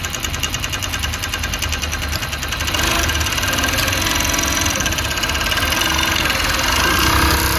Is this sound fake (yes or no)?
no